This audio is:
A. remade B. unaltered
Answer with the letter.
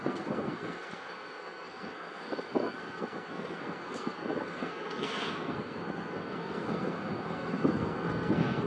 A